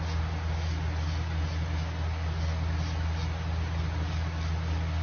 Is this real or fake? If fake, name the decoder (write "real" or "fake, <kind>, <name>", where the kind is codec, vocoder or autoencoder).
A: real